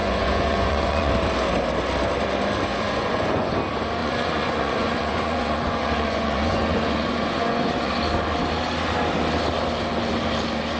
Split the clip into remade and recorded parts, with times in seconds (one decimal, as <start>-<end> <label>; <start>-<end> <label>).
0.0-1.1 remade; 1.1-2.7 recorded; 2.7-3.5 remade; 3.5-4.0 recorded; 4.0-7.9 remade; 7.9-10.8 recorded